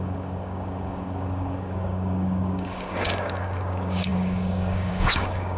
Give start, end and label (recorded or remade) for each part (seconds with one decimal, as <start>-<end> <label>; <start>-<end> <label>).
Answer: 0.0-5.6 remade